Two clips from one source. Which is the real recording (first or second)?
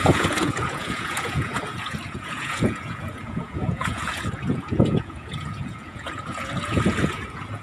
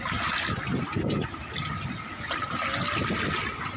second